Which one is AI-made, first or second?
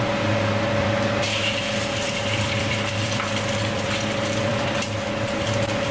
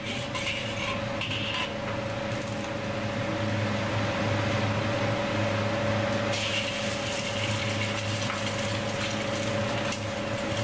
first